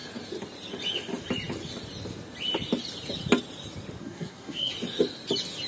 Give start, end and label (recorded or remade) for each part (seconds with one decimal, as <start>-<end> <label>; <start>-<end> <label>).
0.0-4.0 recorded; 4.0-4.7 remade; 4.7-5.7 recorded